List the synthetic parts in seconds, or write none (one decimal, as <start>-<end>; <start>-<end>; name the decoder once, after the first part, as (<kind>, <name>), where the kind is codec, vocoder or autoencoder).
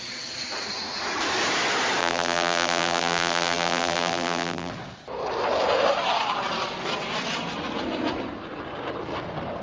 2.0-4.7 (vocoder, BigVGAN v2)